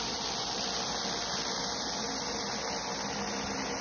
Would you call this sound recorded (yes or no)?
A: yes